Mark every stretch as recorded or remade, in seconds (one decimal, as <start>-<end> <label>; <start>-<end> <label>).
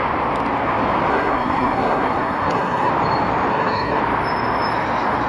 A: 0.0-1.1 recorded; 1.1-2.9 remade; 2.9-3.5 recorded; 3.5-4.0 remade; 4.0-5.3 recorded